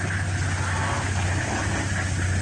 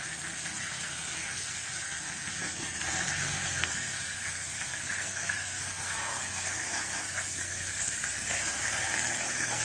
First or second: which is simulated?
second